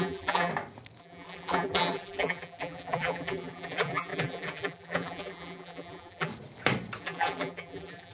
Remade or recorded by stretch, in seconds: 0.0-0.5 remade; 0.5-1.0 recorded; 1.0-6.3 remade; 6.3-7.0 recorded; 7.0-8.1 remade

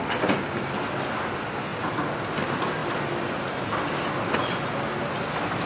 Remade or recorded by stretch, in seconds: 0.0-5.7 recorded

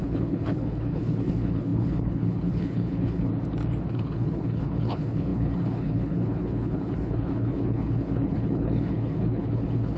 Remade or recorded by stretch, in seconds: 0.0-3.3 remade; 3.3-3.9 recorded; 3.9-10.0 remade

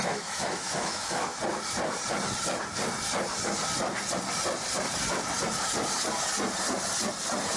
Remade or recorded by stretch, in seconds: 0.0-1.4 remade; 1.4-7.6 recorded